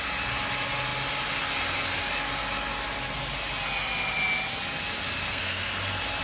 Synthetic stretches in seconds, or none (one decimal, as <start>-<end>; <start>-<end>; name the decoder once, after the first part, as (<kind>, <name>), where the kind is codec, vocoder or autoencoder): 5.2-5.7 (codec, SNAC)